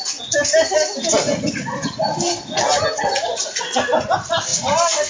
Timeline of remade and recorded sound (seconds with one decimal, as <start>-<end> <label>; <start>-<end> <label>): 0.0-5.1 recorded